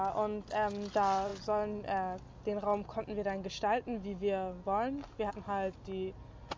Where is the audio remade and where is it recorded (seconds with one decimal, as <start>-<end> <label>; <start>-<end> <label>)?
0.0-6.6 recorded